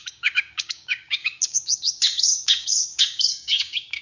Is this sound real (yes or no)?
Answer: no